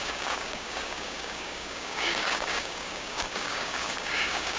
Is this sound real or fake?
fake